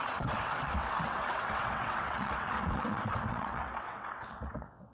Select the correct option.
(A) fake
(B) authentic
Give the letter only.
A